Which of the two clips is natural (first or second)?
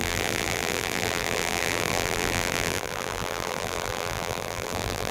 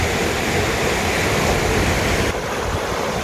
second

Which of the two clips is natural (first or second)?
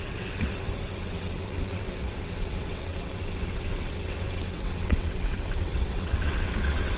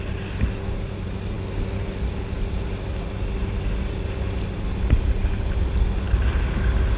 second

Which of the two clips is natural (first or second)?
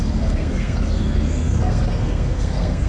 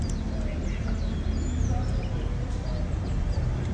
second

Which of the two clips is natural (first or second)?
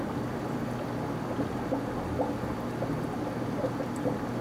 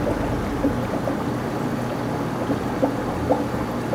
first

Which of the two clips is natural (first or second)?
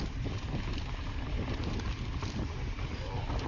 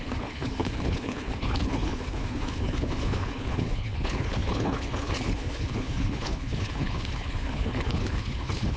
first